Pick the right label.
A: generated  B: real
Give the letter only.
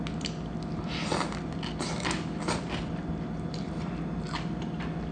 B